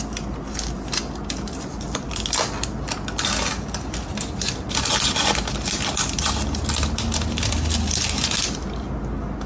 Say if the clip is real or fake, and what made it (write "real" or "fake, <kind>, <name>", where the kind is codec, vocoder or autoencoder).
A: real